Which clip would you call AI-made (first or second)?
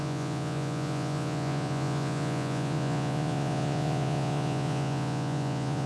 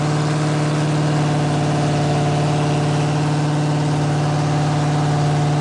first